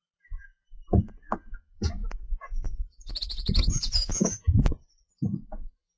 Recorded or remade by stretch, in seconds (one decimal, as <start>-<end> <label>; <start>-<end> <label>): 0.0-0.5 remade; 0.5-1.0 recorded; 1.0-4.6 remade; 4.6-5.1 recorded; 5.1-6.0 remade